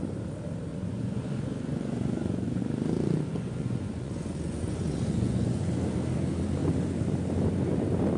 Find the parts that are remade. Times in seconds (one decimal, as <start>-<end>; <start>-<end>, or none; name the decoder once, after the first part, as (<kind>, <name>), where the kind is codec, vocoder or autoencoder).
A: 0.7-2.6 (vocoder, Vocos); 3.3-5.7